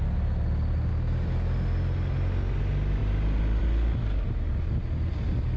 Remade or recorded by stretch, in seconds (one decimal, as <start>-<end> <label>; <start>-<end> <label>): 0.0-5.6 recorded